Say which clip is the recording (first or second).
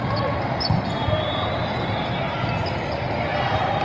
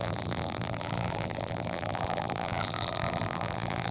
first